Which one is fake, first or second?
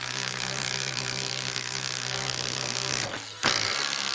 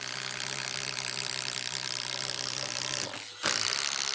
first